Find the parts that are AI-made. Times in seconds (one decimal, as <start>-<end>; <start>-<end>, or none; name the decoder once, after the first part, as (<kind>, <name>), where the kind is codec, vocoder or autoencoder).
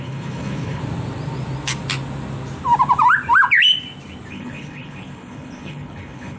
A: 0.0-0.8 (codec, HILCodec); 4.3-6.4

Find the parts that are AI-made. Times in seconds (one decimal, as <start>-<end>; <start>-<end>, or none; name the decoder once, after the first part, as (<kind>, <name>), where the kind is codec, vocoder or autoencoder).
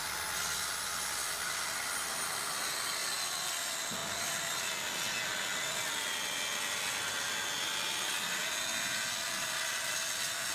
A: 1.2-1.8 (vocoder, BigVGAN v2)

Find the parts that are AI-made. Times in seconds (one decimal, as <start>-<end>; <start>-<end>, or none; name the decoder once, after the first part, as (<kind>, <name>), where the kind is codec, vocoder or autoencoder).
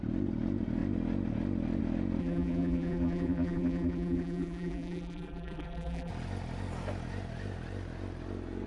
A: 2.2-6.1 (vocoder, BigVGAN v2)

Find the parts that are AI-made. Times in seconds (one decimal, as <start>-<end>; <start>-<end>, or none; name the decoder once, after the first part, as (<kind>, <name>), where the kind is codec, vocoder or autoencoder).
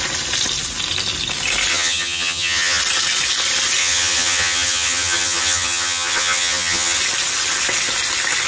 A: 1.7-2.8 (vocoder, HiFi-GAN); 3.8-7.0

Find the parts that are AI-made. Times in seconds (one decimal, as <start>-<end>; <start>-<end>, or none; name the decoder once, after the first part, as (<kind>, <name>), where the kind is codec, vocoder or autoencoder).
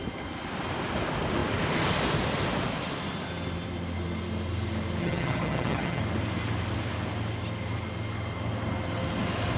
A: 5.0-6.0 (vocoder, HiFi-GAN)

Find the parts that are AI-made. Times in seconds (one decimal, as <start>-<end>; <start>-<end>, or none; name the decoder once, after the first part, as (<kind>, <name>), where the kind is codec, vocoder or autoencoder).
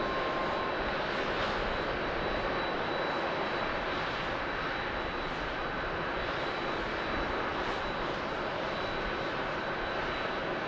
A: 7.5-8.5 (vocoder, BigVGAN v2)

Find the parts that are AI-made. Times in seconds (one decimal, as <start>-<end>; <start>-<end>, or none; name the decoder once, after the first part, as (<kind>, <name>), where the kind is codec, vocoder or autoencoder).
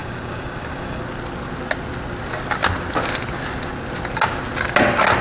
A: 0.0-1.0 (codec, DAC)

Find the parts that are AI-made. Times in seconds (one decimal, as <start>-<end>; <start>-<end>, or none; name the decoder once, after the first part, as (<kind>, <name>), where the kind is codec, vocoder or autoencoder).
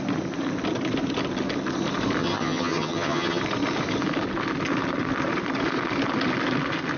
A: 2.2-3.4 (vocoder, HiFi-GAN)